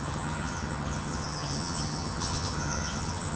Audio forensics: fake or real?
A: fake